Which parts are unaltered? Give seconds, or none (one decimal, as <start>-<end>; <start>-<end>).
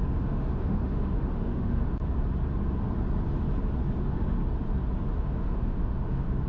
1.8-4.0; 4.4-5.2